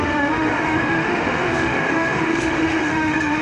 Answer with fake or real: fake